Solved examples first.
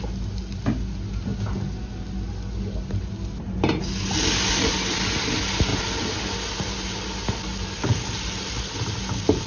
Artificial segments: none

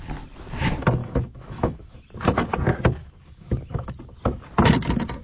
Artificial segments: 1.0-2.0 (autoencoder, DAC-VAE); 3.0-3.9

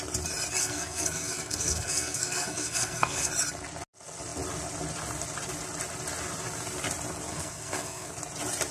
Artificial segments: 0.6-3.3 (codec, SNAC); 7.3-8.1

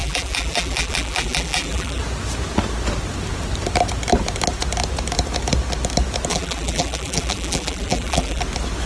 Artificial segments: 0.0-2.0 (vocoder, BigVGAN v2); 6.3-8.4

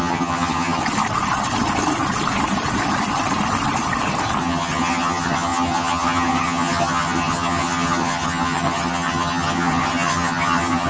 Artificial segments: 0.0-0.8 (vocoder, HiFi-GAN); 4.4-10.9

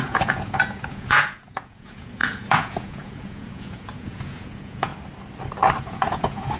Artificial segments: 0.0-4.9 (vocoder, Vocos); 5.8-6.6

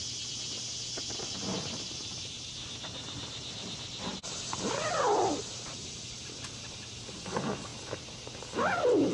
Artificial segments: none

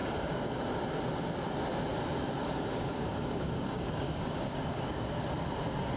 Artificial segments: 0.0-0.5 (codec, DAC); 2.7-5.2